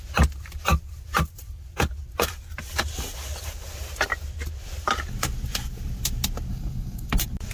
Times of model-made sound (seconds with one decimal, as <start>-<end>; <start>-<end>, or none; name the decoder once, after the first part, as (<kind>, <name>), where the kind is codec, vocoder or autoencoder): 6.5-7.1 (codec, DAC)

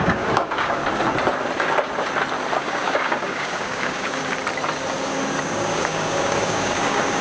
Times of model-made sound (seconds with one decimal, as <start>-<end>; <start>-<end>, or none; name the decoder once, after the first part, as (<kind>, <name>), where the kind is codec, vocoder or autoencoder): 0.0-0.8 (codec, DAC); 2.6-4.2; 5.4-7.2